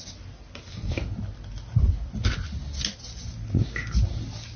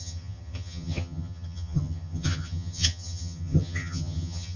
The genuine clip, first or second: first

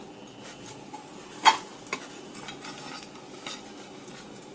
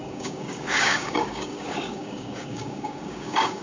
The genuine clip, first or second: first